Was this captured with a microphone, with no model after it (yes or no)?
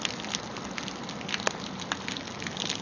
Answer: yes